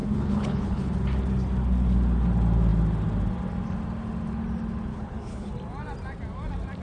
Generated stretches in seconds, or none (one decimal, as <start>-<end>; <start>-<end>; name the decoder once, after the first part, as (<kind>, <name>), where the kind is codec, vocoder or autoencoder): 0.0-0.9 (codec, HILCodec); 4.9-5.5